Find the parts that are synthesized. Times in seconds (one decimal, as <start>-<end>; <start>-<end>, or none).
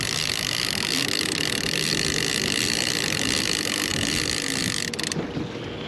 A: none